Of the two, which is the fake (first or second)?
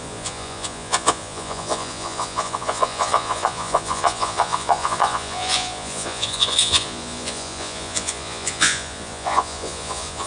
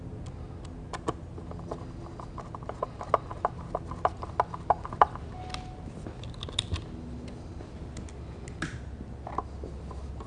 first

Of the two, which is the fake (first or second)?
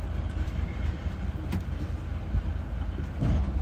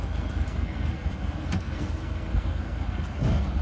second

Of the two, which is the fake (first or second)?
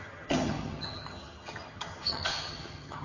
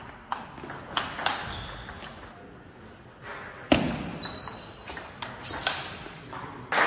first